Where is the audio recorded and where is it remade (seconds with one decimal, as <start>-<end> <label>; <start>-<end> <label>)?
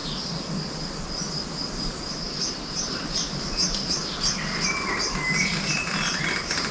0.0-6.7 recorded